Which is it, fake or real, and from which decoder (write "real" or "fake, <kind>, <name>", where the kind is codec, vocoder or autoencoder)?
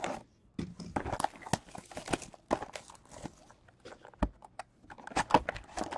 real